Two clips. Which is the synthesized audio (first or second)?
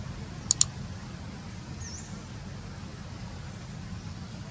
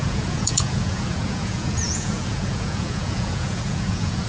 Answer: second